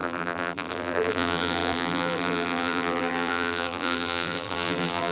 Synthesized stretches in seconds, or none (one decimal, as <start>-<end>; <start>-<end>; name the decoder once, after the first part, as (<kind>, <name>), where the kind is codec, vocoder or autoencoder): 0.0-5.1 (vocoder, BigVGAN v2)